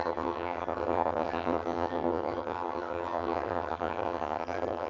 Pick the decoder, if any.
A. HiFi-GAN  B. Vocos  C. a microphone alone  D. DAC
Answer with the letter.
A